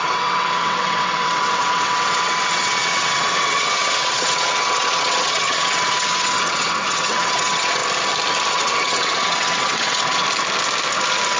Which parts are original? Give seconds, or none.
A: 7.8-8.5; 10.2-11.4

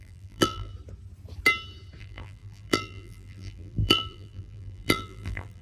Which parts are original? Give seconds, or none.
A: 0.7-2.0

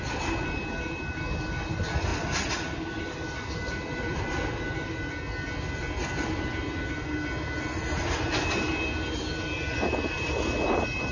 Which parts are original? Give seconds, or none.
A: 0.0-11.1

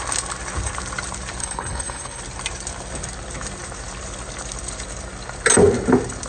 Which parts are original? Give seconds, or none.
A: 0.0-1.4; 2.2-6.3

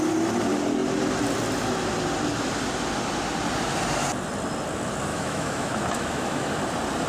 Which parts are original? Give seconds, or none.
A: 0.0-5.1; 6.6-7.1